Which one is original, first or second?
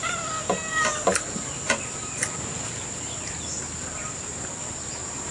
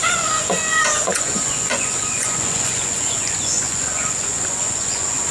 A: first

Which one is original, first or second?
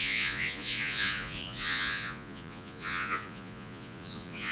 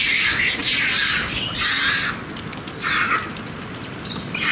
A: second